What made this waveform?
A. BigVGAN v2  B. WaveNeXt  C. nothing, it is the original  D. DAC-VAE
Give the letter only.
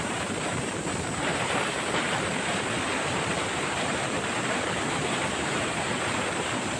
A